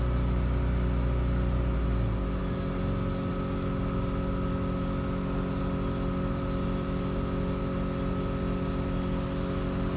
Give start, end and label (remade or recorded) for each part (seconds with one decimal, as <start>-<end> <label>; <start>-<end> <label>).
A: 0.0-10.0 recorded